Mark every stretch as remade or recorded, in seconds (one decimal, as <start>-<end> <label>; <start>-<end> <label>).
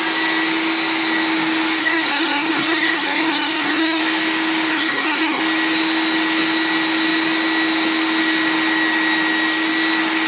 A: 0.0-1.8 recorded; 1.8-4.0 remade; 4.0-4.7 recorded; 4.7-5.4 remade; 5.4-10.3 recorded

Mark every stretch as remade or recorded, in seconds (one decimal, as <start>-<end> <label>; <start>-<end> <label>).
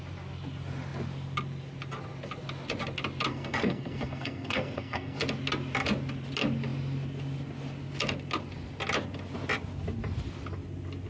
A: 0.0-3.3 recorded; 3.3-5.2 remade; 5.2-11.1 recorded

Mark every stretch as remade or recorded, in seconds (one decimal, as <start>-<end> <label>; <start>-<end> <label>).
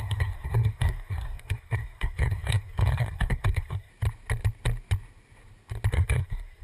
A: 0.0-3.9 remade; 3.9-5.9 recorded; 5.9-6.6 remade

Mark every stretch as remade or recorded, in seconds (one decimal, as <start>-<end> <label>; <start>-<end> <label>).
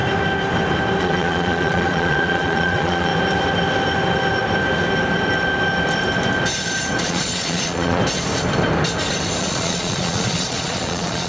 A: 0.0-1.0 recorded; 1.0-3.1 remade; 3.1-7.0 recorded; 7.0-8.0 remade; 8.0-9.4 recorded; 9.4-11.3 remade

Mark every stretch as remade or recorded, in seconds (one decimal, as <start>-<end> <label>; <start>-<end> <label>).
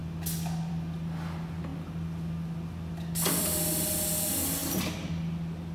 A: 0.0-5.7 recorded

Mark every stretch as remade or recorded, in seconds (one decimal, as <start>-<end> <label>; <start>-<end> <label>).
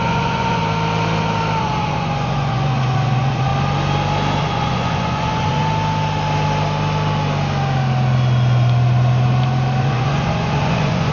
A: 0.0-0.6 remade; 0.6-1.6 recorded; 1.6-3.5 remade; 3.5-4.4 recorded; 4.4-5.6 remade; 5.6-9.8 recorded; 9.8-11.1 remade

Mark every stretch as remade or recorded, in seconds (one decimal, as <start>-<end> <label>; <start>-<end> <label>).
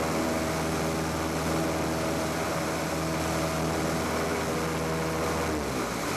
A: 0.0-6.2 recorded